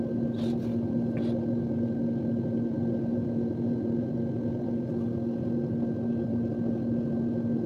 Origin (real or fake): real